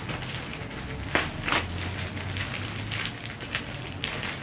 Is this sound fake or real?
real